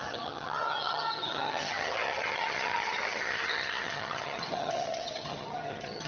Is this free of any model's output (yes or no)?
no